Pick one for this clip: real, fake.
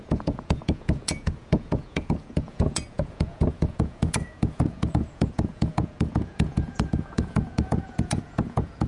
fake